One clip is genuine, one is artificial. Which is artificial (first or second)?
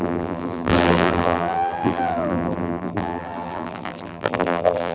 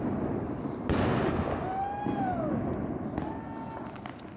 first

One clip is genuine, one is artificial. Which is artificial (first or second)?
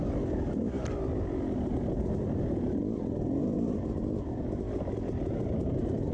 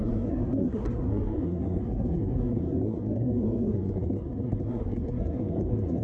second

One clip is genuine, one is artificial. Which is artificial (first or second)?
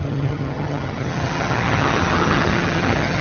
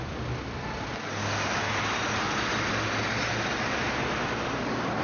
first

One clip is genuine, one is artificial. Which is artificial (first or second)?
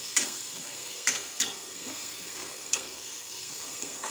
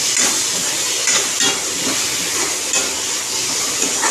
first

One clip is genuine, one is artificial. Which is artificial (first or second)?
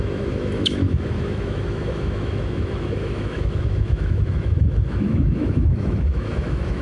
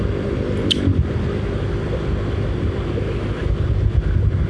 first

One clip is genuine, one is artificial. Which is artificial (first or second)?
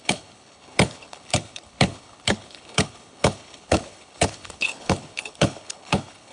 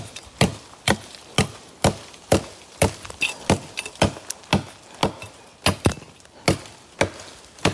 first